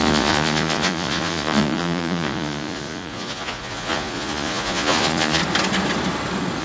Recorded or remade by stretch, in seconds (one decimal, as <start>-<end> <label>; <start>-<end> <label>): 0.0-5.4 remade; 5.4-6.6 recorded